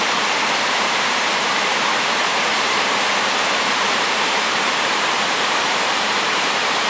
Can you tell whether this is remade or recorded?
remade